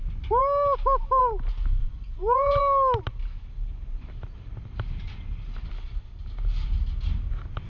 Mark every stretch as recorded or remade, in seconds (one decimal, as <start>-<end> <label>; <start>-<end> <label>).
0.0-1.8 recorded; 1.8-2.6 remade; 2.6-7.7 recorded